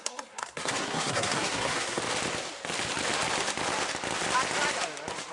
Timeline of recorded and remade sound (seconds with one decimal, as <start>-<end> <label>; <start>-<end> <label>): 0.0-2.0 remade; 2.0-5.3 recorded